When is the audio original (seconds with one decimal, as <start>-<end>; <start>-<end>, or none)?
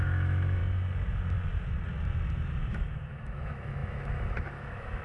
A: 0.6-2.7